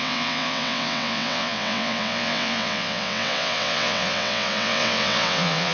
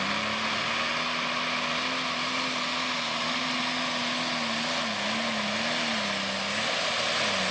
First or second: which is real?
second